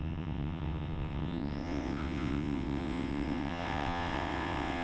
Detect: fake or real fake